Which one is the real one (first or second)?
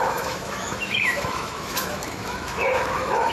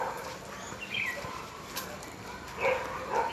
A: second